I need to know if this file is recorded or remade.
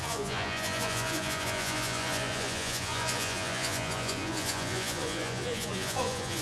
remade